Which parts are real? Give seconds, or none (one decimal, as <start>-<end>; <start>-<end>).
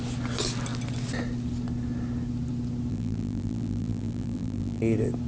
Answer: 0.0-2.9; 4.8-5.3